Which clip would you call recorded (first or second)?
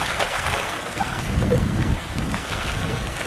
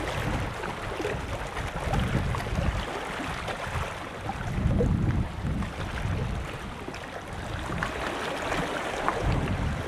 second